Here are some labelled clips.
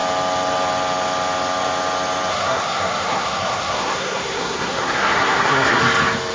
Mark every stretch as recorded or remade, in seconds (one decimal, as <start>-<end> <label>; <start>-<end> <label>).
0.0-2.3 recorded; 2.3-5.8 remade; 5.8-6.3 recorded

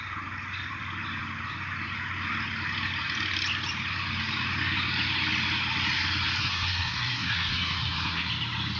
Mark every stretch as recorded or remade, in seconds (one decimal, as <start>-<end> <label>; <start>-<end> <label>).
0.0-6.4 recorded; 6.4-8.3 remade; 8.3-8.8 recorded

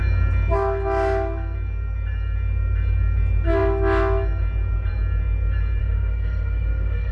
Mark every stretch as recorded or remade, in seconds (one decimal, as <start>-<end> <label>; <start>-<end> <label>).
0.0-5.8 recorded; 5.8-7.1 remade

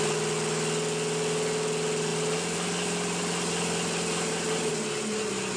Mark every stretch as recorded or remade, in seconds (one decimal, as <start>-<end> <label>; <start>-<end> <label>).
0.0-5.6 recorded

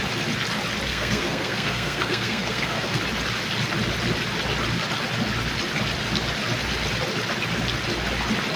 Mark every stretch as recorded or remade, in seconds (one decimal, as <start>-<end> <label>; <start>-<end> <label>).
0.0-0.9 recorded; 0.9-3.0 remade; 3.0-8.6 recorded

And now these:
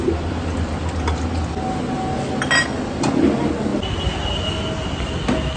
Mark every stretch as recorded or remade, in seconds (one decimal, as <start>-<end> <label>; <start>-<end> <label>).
0.0-5.6 recorded